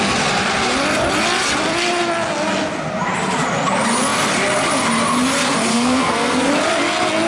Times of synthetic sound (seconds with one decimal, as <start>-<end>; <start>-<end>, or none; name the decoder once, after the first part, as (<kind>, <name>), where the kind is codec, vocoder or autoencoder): 5.7-6.5 (codec, SNAC)